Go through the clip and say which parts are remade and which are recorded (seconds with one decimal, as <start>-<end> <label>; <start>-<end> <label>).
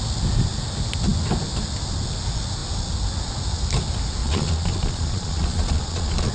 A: 0.0-4.2 recorded; 4.2-6.3 remade